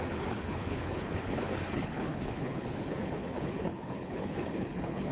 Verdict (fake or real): fake